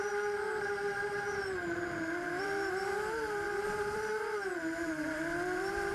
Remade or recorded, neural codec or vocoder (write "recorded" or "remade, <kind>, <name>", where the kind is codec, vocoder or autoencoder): remade, vocoder, BigVGAN v2